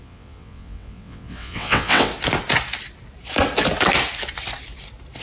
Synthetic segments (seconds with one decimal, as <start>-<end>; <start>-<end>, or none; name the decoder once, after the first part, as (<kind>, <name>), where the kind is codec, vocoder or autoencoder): 0.0-2.1 (vocoder, WaveNeXt)